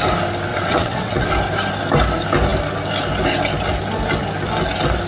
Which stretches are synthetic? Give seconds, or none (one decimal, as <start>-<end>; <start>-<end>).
0.5-1.3